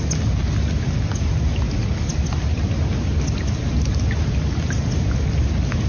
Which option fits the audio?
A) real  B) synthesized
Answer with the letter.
A